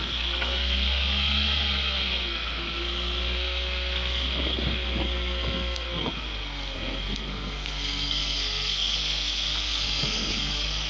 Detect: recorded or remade remade